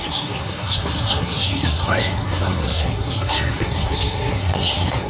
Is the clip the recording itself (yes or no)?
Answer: no